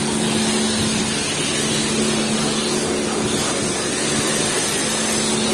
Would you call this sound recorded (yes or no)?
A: yes